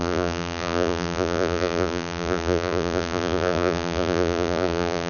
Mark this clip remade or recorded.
remade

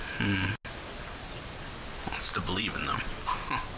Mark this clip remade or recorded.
recorded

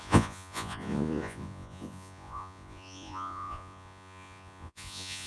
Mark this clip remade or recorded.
remade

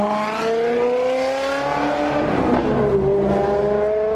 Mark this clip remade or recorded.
recorded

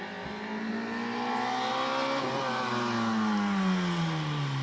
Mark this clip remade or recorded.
recorded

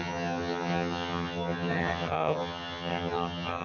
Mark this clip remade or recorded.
remade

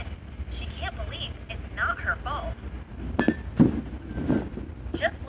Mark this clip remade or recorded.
recorded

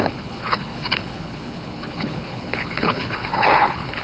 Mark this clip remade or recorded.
remade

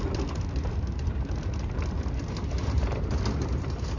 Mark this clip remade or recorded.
recorded